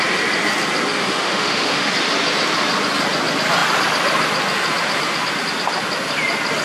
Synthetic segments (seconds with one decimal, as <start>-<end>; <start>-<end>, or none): 1.0-1.9